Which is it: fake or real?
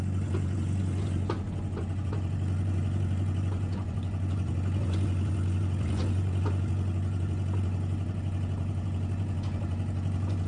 fake